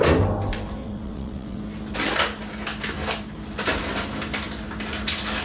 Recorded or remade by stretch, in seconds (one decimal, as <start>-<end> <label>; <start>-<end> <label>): 0.0-0.8 recorded; 0.8-1.6 remade; 1.6-5.4 recorded

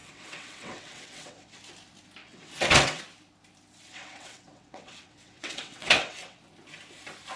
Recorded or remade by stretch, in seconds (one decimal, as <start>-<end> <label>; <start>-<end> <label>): 0.0-1.6 remade; 1.6-2.2 recorded; 2.2-3.0 remade; 3.0-3.9 recorded; 3.9-6.4 remade; 6.4-7.4 recorded